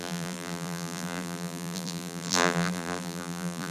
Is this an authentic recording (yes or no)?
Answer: no